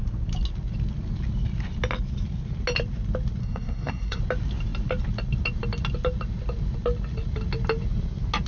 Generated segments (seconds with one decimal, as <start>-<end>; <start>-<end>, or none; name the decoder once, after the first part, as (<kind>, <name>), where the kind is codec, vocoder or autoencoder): 3.4-4.2 (codec, SNAC)